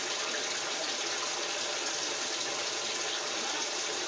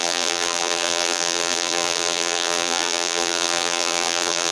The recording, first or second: first